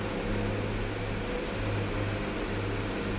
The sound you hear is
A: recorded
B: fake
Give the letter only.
A